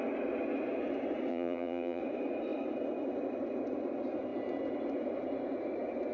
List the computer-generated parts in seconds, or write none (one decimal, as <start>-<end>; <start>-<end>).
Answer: 1.3-2.0